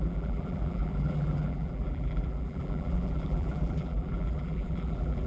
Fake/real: fake